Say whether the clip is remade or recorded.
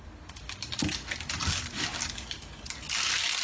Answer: recorded